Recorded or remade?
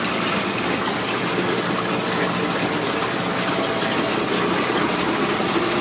recorded